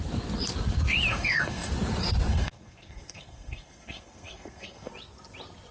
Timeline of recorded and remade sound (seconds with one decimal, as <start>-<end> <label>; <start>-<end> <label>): 0.0-1.1 recorded; 1.1-1.7 remade; 1.7-2.3 recorded; 2.3-4.9 remade; 4.9-5.7 recorded